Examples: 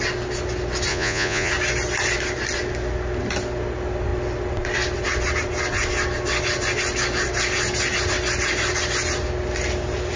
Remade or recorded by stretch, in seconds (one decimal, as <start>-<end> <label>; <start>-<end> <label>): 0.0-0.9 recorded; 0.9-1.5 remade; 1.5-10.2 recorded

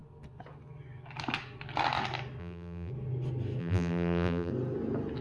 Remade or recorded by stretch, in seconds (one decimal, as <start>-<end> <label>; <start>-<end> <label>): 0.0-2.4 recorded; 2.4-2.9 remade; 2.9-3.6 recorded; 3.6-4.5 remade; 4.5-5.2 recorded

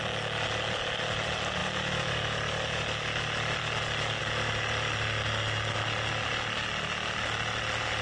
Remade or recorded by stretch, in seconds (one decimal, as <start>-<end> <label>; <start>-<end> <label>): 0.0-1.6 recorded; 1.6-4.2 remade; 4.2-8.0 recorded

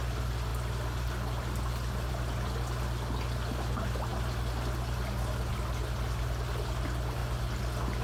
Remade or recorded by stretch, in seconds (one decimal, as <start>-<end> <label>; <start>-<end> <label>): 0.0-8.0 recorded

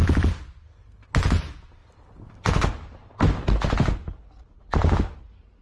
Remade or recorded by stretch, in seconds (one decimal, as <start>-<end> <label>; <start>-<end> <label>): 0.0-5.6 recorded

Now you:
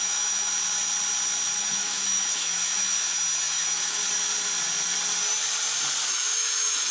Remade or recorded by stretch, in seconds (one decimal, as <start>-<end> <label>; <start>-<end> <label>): 0.0-0.5 remade; 0.5-1.6 recorded; 1.6-4.0 remade; 4.0-6.1 recorded; 6.1-6.9 remade

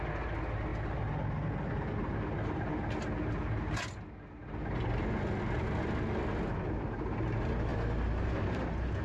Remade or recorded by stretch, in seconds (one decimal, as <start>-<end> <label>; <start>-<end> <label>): 0.0-9.0 recorded